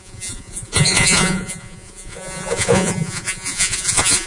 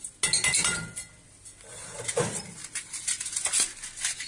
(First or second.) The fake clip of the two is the first